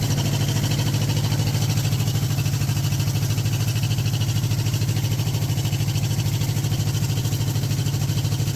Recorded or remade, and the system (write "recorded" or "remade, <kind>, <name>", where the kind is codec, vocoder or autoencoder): recorded